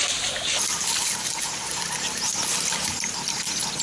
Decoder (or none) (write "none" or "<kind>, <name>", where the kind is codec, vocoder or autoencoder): none